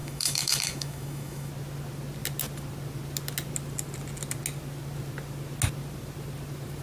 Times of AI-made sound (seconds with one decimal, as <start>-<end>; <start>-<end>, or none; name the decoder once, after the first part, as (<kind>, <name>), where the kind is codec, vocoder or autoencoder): 0.0-1.5 (autoencoder, DAC-VAE)